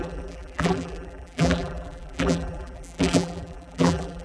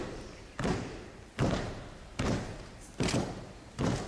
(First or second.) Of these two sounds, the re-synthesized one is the first